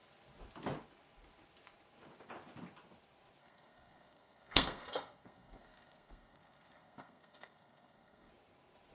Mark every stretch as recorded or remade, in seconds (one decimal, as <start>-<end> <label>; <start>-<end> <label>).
0.0-3.4 recorded; 3.4-8.3 remade; 8.3-8.9 recorded